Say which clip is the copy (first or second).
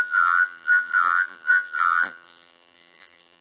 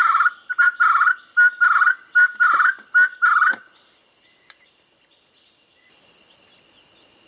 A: first